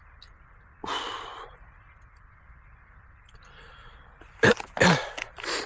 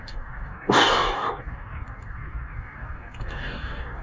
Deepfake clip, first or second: second